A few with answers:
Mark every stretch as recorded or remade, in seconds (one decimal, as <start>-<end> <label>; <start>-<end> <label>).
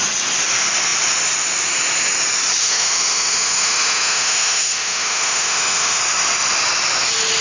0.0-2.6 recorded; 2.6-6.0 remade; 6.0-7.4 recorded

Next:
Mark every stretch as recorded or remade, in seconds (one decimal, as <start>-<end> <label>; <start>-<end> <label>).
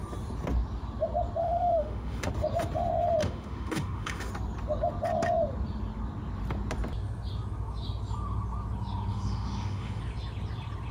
0.0-1.4 recorded; 1.4-2.3 remade; 2.3-3.2 recorded; 3.2-4.3 remade; 4.3-9.1 recorded; 9.1-10.0 remade; 10.0-10.9 recorded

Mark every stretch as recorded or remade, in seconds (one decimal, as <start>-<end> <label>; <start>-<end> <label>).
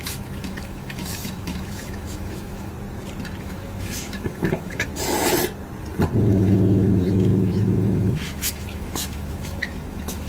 0.0-2.7 remade; 2.7-3.4 recorded; 3.4-4.9 remade; 4.9-6.2 recorded; 6.2-10.3 remade